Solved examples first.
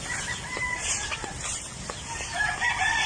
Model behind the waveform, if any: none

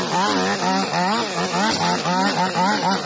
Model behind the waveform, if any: none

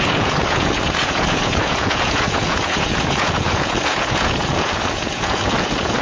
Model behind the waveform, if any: vocoder, Vocos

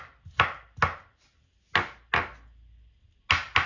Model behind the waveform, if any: none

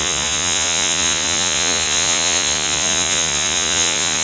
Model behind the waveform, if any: vocoder, Vocos